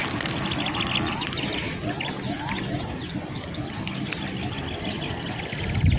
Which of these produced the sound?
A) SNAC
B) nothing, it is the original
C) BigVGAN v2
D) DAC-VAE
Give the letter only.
B